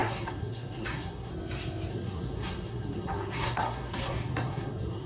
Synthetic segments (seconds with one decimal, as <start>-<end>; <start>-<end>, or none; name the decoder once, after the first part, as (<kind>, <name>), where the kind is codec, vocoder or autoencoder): 0.0-1.3 (codec, SNAC); 1.9-5.1